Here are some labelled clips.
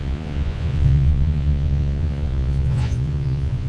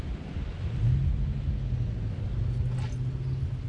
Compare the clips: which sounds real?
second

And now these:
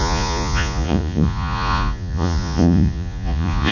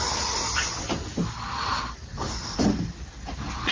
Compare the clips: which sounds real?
second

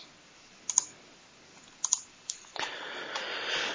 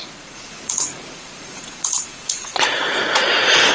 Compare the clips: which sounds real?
first